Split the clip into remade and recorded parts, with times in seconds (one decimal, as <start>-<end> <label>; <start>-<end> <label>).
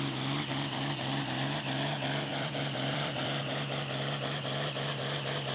0.0-2.3 recorded; 2.3-3.4 remade; 3.4-5.5 recorded